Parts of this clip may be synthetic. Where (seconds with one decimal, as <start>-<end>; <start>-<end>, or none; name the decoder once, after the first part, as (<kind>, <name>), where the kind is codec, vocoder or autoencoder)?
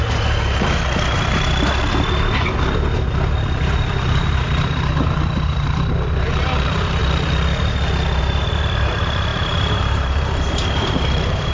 3.6-7.0 (vocoder, BigVGAN v2); 8.2-11.5